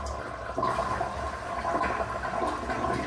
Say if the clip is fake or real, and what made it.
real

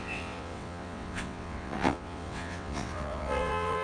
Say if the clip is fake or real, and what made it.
fake, vocoder, WaveNeXt